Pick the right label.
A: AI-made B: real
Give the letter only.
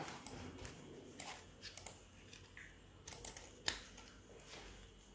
B